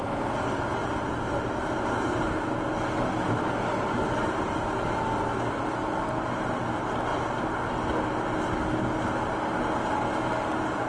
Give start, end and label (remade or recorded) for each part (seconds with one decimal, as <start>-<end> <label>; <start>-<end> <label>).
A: 0.0-0.8 recorded; 0.8-2.5 remade; 2.5-10.9 recorded